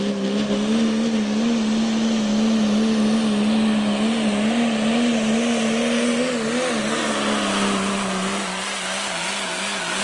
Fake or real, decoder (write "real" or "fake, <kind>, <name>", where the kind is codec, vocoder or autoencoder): real